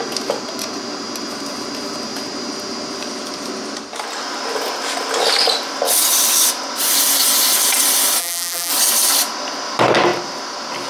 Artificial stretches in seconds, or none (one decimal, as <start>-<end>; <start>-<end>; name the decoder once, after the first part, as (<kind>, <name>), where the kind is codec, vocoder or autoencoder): 8.2-8.7 (vocoder, BigVGAN v2)